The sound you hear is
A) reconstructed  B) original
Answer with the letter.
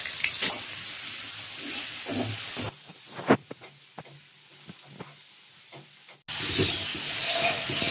B